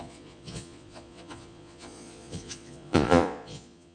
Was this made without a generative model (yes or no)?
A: no